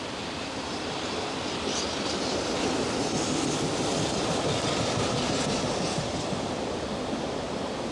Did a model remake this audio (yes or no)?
no